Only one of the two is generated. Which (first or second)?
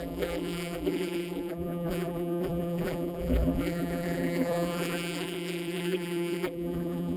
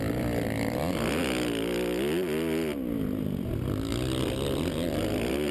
first